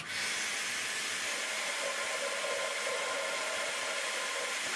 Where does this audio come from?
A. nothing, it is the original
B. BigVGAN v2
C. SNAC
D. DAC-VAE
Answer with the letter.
A